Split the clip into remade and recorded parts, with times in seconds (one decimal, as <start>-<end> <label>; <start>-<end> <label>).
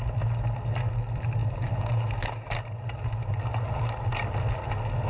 0.0-5.1 recorded